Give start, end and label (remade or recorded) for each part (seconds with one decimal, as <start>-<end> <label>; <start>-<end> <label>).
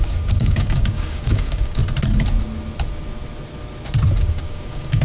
0.0-1.8 remade; 1.8-4.2 recorded; 4.2-5.0 remade